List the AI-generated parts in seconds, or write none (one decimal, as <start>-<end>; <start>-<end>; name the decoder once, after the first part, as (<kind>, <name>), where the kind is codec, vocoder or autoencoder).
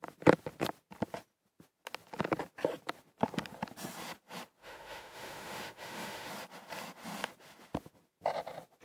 4.6-6.3 (autoencoder, DAC-VAE)